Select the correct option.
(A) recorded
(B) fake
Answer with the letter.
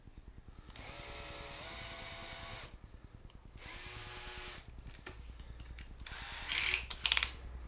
A